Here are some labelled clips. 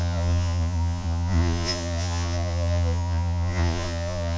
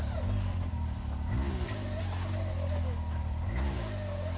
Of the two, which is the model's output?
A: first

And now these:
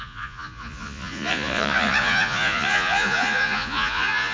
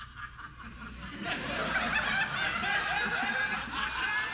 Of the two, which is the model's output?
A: first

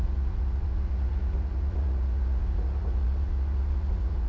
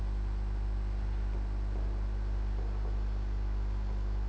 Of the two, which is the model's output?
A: first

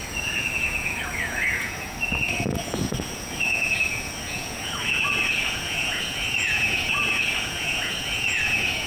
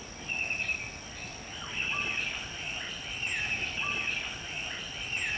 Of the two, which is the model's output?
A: first